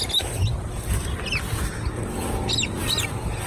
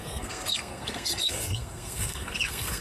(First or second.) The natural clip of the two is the first